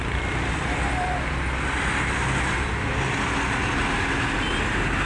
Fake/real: real